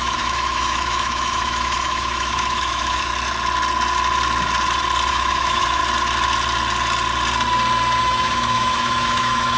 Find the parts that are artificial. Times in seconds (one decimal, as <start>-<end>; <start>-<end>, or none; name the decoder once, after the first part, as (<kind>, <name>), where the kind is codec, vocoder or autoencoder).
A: 0.0-3.1 (autoencoder, DAC-VAE); 5.1-5.8; 8.0-9.6

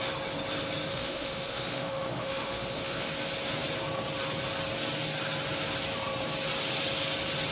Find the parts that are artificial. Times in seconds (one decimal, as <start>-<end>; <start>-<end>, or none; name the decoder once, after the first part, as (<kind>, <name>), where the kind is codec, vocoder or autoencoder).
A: 0.9-3.1 (autoencoder, DAC-VAE)

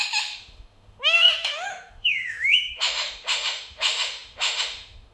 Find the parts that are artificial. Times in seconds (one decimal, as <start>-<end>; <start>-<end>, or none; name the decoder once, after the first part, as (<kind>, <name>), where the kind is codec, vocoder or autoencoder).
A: 0.0-5.1 (autoencoder, DAC-VAE)

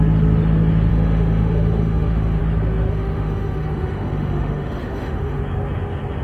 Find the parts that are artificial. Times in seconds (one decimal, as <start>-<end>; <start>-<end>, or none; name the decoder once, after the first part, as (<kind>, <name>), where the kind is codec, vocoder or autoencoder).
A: 0.9-2.4 (autoencoder, DAC-VAE); 2.9-5.4

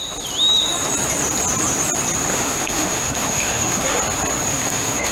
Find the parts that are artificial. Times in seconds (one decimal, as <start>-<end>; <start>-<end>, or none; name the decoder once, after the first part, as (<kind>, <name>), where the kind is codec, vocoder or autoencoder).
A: 2.3-4.0 (autoencoder, DAC-VAE); 4.5-5.1

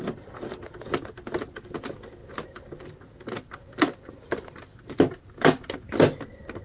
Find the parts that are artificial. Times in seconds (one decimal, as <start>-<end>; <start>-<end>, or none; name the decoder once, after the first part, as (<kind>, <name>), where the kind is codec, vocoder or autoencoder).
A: none

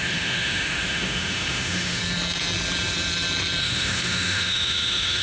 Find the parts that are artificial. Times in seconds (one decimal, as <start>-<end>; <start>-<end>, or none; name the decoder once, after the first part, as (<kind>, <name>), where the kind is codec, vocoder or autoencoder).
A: 0.0-2.0 (autoencoder, DAC-VAE); 3.6-5.2

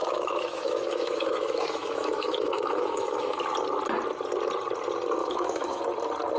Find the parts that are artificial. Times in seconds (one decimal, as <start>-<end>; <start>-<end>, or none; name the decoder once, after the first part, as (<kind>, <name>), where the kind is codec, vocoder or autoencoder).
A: 0.0-3.4 (autoencoder, DAC-VAE); 5.2-5.8